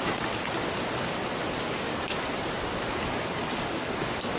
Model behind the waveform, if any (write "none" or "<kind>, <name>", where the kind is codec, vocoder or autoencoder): none